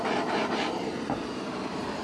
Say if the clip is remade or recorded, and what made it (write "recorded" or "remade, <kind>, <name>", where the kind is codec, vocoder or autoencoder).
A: remade, vocoder, BigVGAN v2